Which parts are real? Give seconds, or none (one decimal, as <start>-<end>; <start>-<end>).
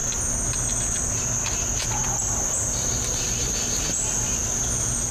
0.0-5.1